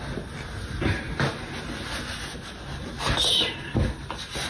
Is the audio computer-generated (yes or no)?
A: no